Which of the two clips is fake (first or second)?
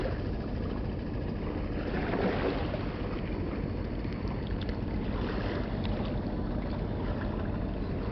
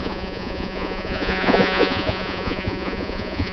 second